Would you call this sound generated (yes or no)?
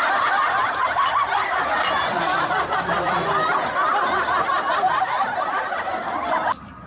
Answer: yes